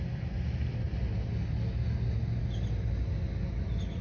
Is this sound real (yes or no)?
yes